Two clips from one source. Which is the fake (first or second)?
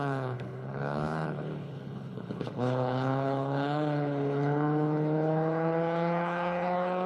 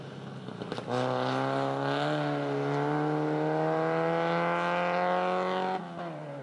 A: first